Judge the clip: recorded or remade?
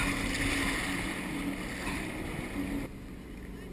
recorded